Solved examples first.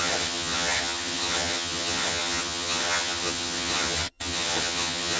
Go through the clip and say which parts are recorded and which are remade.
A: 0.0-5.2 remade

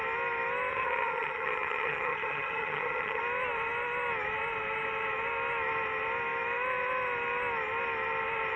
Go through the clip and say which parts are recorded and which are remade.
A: 0.0-0.7 recorded; 0.7-3.2 remade; 3.2-8.6 recorded

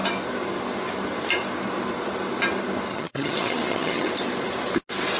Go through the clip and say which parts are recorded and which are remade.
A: 0.0-2.9 recorded; 2.9-4.1 remade; 4.1-5.2 recorded